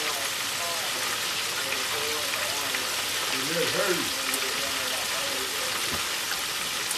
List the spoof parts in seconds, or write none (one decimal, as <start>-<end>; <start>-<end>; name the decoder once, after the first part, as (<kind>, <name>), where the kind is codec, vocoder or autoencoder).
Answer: none

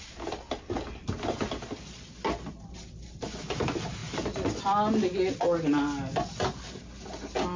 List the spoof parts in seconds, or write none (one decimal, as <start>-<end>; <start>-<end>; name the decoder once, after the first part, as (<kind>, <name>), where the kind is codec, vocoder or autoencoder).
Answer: none

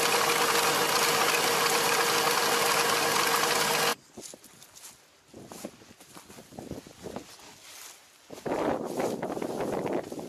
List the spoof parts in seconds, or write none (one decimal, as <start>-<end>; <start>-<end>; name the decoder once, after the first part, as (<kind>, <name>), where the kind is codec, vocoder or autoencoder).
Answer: none

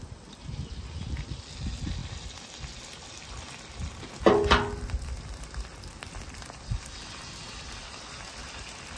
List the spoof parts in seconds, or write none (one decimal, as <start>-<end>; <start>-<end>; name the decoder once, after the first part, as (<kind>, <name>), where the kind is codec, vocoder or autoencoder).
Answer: none

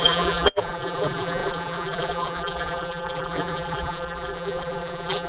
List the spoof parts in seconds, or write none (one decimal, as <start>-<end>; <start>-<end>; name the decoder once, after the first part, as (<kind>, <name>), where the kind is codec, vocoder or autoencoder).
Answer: 0.0-5.3 (vocoder, BigVGAN v2)

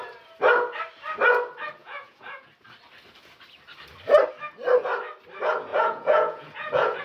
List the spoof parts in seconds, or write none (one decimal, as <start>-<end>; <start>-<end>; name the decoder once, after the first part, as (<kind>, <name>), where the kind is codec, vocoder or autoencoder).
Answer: 1.8-2.5 (vocoder, Vocos); 5.7-7.0

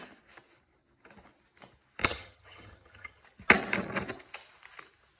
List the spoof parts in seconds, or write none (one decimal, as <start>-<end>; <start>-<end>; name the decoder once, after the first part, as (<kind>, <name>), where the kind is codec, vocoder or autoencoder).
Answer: 2.0-3.2 (vocoder, HiFi-GAN)

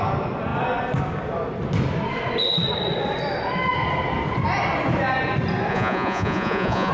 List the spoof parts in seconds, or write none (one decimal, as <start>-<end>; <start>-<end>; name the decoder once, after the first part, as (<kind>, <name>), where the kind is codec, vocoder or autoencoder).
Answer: 5.7-6.9 (vocoder, Vocos)